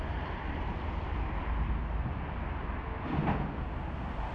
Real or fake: real